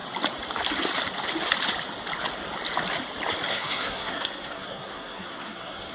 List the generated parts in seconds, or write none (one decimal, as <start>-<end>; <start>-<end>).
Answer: 3.5-5.9

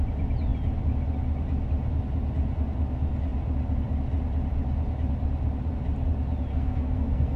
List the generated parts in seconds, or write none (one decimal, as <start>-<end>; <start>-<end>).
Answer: 6.5-7.4